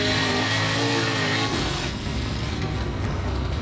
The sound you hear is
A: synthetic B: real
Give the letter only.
A